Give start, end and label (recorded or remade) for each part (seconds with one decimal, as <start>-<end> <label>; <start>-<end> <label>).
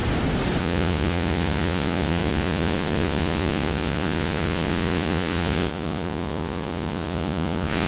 0.0-0.6 recorded; 0.6-7.9 remade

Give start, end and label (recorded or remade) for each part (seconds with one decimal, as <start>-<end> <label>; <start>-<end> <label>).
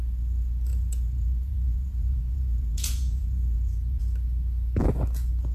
0.0-0.7 recorded; 0.7-4.0 remade; 4.0-5.5 recorded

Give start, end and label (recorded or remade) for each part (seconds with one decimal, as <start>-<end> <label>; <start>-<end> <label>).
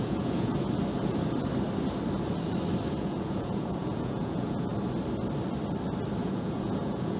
0.0-0.5 remade; 0.5-2.9 recorded; 2.9-4.7 remade; 4.7-6.2 recorded; 6.2-7.2 remade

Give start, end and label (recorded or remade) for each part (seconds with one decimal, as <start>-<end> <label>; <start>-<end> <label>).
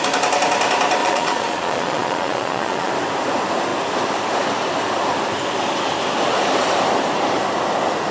0.0-1.0 recorded; 1.0-2.9 remade; 2.9-8.1 recorded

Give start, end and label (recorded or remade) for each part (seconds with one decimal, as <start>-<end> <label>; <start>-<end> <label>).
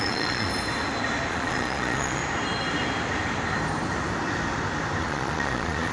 0.0-0.5 remade; 0.5-1.3 recorded; 1.3-2.2 remade; 2.2-5.0 recorded; 5.0-5.9 remade